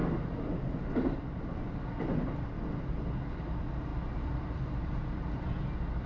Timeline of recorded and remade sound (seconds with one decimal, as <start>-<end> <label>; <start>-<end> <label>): 0.0-6.1 recorded